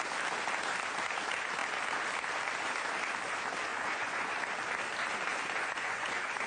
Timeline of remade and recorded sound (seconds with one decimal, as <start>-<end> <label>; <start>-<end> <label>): 0.0-3.7 recorded; 3.7-4.3 remade; 4.3-5.3 recorded; 5.3-6.5 remade